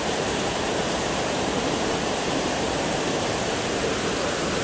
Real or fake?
fake